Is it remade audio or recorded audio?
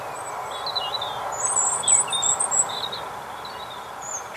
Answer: recorded